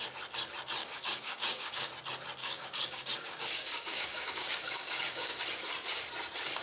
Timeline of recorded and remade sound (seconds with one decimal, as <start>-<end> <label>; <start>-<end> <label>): 0.0-0.8 recorded; 0.8-1.9 remade; 1.9-2.4 recorded; 2.4-5.4 remade; 5.4-6.6 recorded